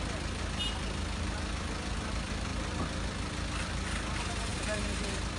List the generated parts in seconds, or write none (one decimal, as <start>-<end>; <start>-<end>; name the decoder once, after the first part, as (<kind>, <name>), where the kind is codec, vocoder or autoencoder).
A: none